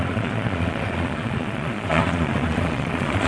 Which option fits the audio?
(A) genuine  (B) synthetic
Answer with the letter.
B